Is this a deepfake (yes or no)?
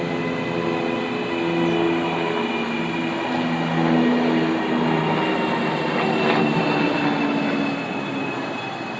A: no